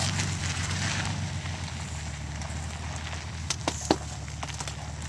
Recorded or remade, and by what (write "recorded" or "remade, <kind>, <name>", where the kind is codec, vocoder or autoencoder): recorded